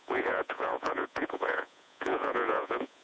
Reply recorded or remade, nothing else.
remade